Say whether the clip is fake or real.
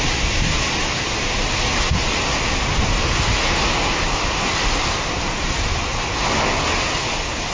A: real